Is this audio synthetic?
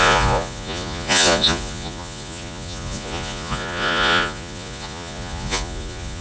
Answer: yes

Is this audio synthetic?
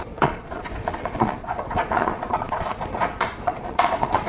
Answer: yes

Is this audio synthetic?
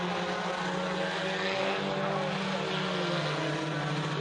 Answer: no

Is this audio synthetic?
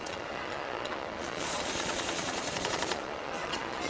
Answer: yes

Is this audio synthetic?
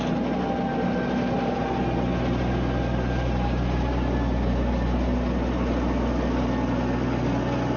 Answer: no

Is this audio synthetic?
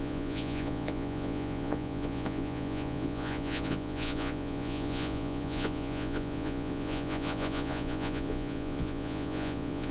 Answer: yes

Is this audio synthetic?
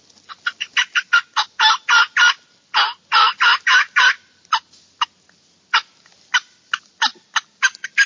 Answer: no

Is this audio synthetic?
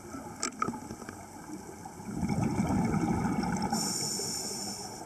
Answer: no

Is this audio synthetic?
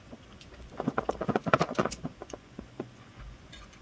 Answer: yes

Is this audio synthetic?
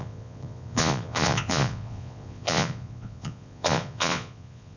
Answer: yes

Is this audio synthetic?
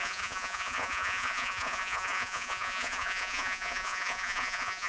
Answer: yes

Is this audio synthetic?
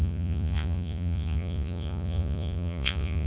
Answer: yes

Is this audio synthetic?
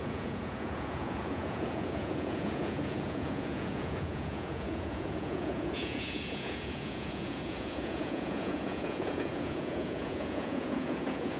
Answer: yes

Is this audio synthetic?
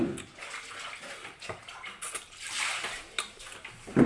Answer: no